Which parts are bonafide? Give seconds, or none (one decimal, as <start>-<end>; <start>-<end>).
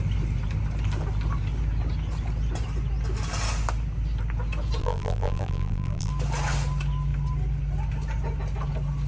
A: 0.0-4.8; 6.1-9.1